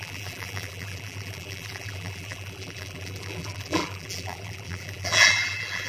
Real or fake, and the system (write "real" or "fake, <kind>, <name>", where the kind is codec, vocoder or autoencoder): fake, vocoder, BigVGAN v2